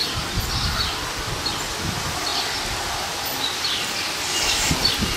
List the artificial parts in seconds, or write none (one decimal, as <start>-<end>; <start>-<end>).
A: none